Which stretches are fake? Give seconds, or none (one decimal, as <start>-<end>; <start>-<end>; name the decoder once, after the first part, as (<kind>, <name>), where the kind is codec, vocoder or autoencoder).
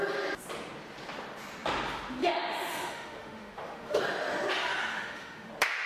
2.2-4.0 (autoencoder, DAC-VAE); 4.9-5.5